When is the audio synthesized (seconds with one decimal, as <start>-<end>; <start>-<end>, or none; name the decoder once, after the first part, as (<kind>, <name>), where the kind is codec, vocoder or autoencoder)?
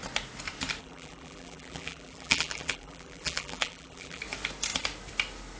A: 0.8-4.2 (vocoder, BigVGAN v2)